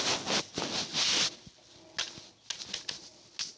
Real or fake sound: real